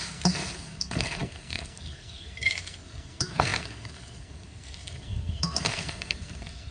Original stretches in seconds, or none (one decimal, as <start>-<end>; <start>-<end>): none